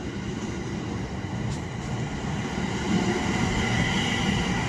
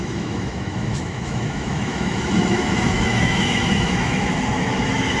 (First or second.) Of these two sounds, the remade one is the second